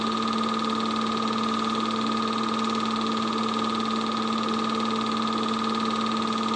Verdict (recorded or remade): recorded